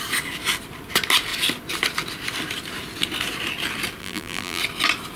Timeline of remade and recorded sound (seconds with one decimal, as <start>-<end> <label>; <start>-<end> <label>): 0.0-4.0 recorded; 4.0-4.6 remade; 4.6-5.2 recorded